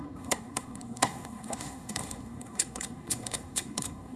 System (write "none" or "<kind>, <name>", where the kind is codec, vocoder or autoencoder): codec, SNAC